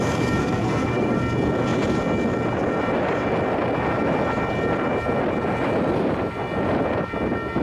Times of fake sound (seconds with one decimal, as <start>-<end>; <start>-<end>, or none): 0.4-1.2